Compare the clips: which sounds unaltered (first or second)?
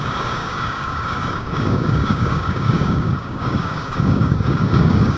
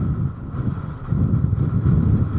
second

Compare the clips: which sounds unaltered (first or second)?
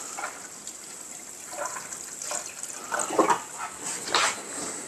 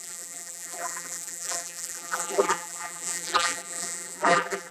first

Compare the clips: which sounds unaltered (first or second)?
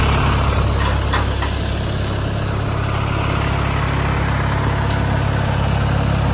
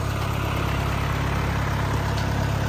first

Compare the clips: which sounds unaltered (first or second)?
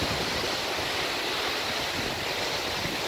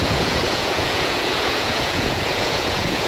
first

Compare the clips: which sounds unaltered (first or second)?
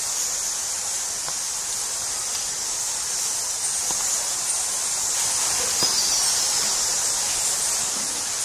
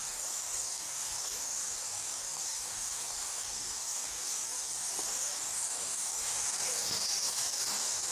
first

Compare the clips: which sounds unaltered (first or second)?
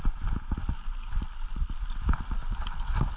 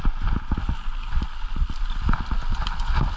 second